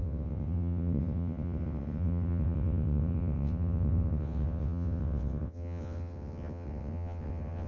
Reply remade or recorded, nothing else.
remade